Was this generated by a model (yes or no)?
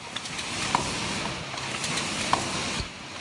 no